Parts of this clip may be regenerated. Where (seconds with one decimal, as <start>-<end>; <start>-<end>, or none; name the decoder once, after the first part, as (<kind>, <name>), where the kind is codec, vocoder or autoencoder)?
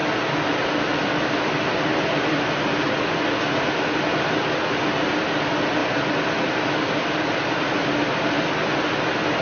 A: none